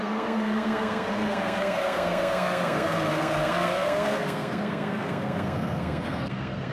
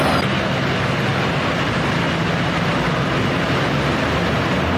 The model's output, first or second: first